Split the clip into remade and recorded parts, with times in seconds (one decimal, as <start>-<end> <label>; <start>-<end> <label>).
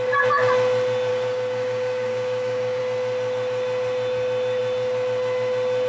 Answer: 0.0-1.1 recorded; 1.1-2.8 remade; 2.8-5.9 recorded